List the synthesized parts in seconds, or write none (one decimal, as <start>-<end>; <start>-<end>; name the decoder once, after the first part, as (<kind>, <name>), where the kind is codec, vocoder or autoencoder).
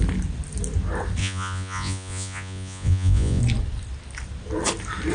1.2-3.4 (vocoder, Vocos)